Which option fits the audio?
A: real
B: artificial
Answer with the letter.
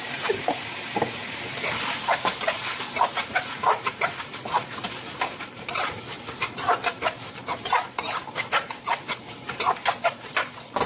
B